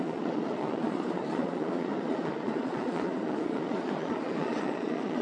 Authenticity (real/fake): fake